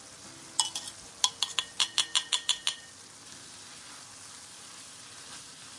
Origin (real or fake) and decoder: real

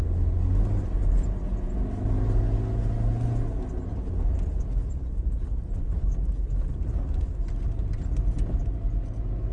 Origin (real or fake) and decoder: real